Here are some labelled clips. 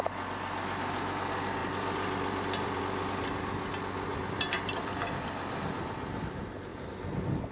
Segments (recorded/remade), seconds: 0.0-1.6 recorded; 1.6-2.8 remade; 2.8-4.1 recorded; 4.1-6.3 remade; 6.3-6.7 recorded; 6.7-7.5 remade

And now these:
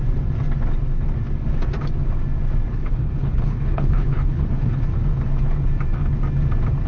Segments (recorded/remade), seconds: 0.0-2.7 recorded; 2.7-4.8 remade; 4.8-6.9 recorded

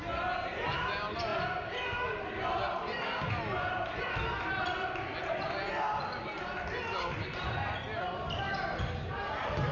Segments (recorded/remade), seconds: 0.0-9.7 recorded

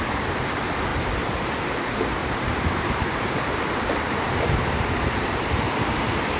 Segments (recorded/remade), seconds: 0.0-0.9 recorded; 0.9-1.4 remade; 1.4-2.2 recorded; 2.2-6.0 remade; 6.0-6.4 recorded

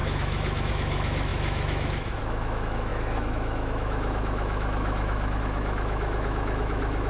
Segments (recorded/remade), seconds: 0.0-7.1 remade